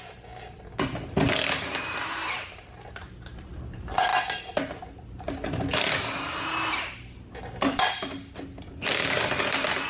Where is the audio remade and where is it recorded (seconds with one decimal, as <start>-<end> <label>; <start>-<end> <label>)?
0.0-9.9 recorded